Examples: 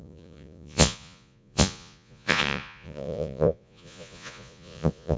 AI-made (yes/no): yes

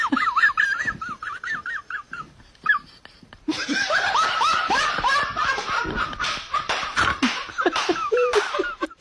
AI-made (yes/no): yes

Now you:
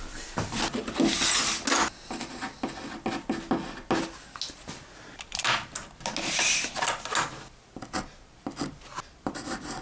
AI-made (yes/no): no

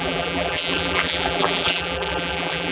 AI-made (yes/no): yes